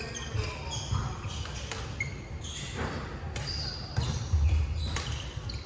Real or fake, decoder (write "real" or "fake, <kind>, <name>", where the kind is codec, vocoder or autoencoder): real